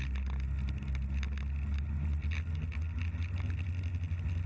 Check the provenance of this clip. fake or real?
real